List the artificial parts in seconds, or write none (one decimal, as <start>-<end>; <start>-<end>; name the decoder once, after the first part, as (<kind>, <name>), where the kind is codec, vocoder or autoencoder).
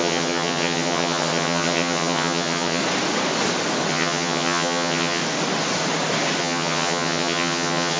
0.0-2.8 (vocoder, HiFi-GAN); 3.9-5.2; 6.4-8.0